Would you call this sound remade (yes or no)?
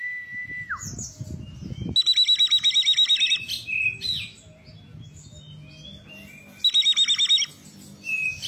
no